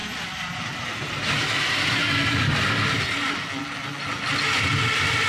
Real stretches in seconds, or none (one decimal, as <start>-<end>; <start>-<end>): 0.0-5.3